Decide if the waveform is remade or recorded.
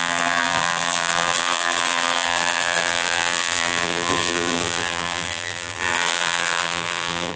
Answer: remade